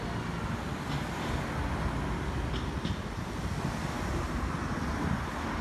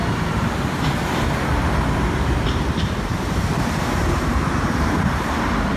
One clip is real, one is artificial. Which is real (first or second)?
first